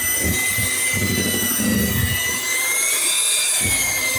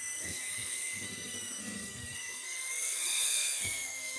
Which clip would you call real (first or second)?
first